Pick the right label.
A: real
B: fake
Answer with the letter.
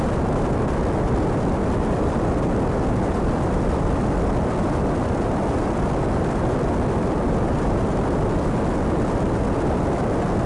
A